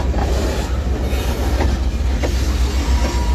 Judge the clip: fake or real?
real